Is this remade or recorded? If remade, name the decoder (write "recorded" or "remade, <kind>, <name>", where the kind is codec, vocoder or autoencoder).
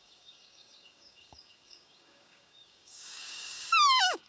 remade, codec, DAC